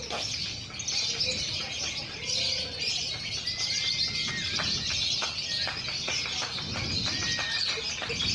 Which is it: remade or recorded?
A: recorded